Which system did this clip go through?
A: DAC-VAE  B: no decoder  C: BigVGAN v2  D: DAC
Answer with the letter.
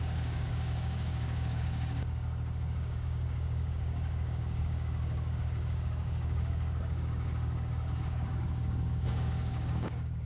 D